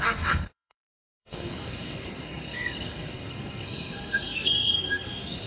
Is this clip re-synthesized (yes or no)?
yes